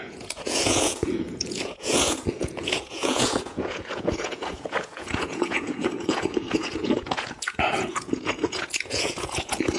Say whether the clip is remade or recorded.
remade